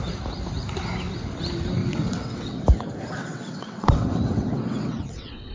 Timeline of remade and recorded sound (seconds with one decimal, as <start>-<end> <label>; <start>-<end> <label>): 0.0-1.8 recorded; 1.8-2.6 remade; 2.6-3.2 recorded; 3.2-5.5 remade